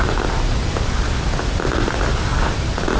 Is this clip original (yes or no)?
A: yes